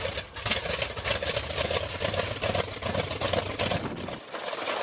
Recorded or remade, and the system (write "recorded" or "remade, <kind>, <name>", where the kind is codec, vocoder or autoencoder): recorded